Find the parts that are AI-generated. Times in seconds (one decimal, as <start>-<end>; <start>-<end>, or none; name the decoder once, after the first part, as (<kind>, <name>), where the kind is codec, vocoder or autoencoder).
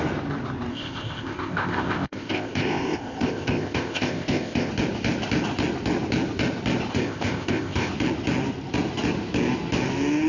0.7-4.7 (codec, ZipCodec); 6.9-7.9